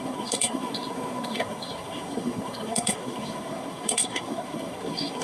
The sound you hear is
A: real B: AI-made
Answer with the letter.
B